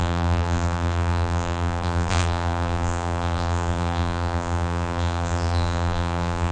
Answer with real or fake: fake